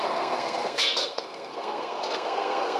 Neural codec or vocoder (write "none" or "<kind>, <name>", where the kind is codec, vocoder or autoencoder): codec, SNAC